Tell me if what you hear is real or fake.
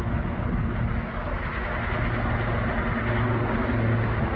real